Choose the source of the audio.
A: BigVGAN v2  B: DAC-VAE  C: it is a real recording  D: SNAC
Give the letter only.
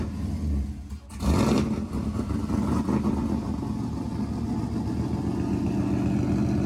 C